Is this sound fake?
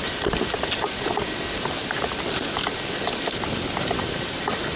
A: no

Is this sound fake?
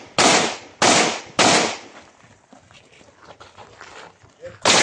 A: no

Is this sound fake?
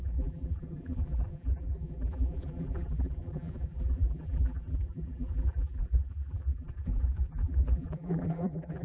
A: yes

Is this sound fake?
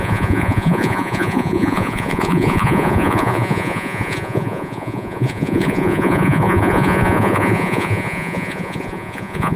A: yes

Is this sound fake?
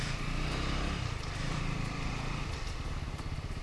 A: yes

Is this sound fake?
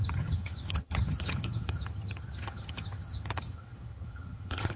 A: yes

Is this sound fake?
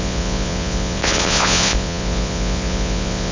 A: yes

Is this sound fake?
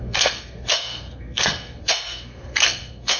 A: yes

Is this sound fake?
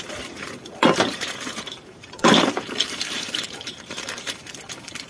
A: yes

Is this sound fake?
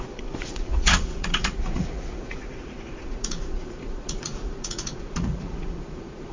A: yes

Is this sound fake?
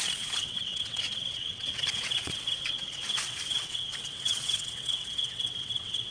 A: yes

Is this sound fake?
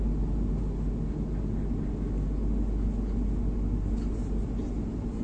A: no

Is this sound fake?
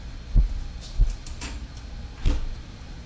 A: no